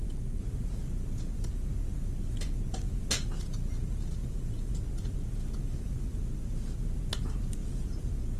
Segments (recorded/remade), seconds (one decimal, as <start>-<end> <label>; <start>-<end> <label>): 0.0-4.2 recorded; 4.2-4.8 remade; 4.8-5.6 recorded; 5.6-6.1 remade; 6.1-8.4 recorded